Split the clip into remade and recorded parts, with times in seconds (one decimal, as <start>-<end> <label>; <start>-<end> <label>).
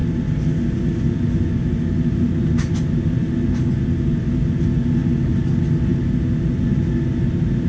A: 0.0-7.7 recorded